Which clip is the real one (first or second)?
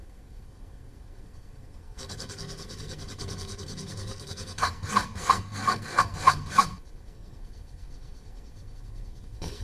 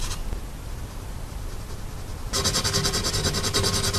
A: second